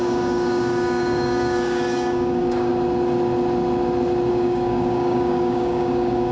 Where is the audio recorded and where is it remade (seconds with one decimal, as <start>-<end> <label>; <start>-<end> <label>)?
0.0-2.7 remade; 2.7-4.3 recorded; 4.3-6.3 remade